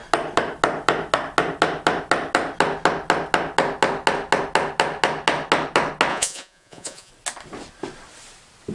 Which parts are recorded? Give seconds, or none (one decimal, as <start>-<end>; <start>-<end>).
0.0-6.1; 7.1-8.7